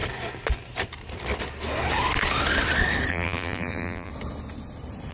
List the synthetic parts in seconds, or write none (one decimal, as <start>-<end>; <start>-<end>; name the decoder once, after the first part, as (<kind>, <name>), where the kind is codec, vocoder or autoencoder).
3.1-4.1 (vocoder, BigVGAN v2)